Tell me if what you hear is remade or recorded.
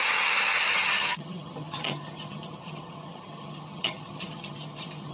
remade